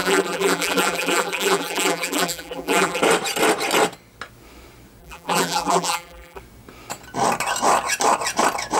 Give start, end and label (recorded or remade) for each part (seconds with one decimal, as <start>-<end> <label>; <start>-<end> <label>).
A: 0.0-3.0 remade; 3.0-5.0 recorded; 5.0-6.4 remade; 6.4-8.8 recorded